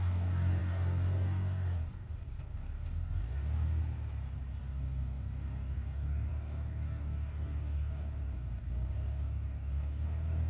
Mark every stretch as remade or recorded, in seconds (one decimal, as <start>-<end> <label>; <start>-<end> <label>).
0.0-3.8 remade; 3.8-4.6 recorded; 4.6-10.5 remade

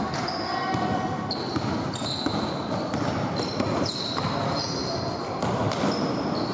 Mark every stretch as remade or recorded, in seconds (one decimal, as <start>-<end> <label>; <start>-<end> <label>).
0.0-6.5 recorded

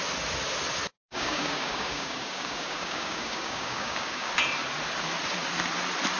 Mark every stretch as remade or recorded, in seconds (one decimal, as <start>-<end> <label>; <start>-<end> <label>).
0.0-1.0 recorded; 1.0-4.3 remade; 4.3-6.2 recorded

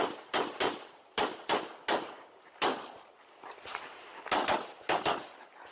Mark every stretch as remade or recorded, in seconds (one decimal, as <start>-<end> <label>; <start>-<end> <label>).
0.0-2.7 recorded; 2.7-3.2 remade; 3.2-5.7 recorded